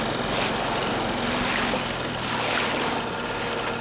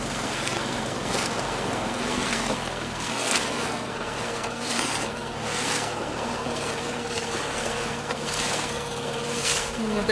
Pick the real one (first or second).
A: first